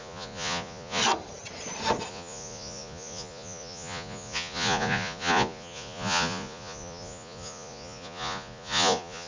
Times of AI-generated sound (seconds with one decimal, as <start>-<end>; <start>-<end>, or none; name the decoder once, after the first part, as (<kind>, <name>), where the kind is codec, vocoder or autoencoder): 0.0-1.0 (vocoder, Vocos); 2.1-9.3